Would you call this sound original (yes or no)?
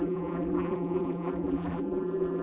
no